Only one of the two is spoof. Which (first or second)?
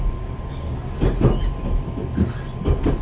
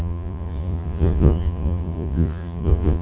second